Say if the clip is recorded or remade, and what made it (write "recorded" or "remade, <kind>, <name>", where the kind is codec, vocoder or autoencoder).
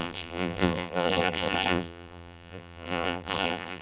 remade, vocoder, BigVGAN v2